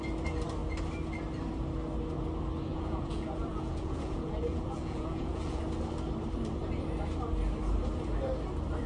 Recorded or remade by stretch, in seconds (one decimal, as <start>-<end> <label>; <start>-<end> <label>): 0.0-2.7 recorded; 2.7-5.6 remade; 5.6-8.9 recorded